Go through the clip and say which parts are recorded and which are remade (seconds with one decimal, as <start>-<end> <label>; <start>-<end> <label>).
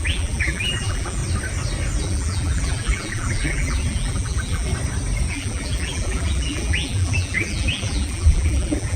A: 0.0-1.2 remade; 1.2-2.0 recorded; 2.0-4.7 remade; 4.7-5.3 recorded; 5.3-9.0 remade